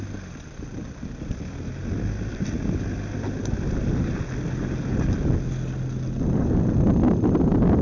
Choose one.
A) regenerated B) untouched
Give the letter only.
B